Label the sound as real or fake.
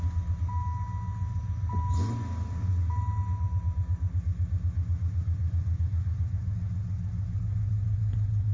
real